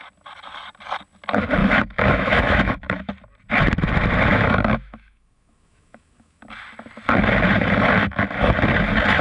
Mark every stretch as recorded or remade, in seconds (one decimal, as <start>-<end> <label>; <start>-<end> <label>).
0.0-1.6 recorded; 1.6-3.1 remade; 3.1-4.3 recorded; 4.3-6.4 remade; 6.4-9.2 recorded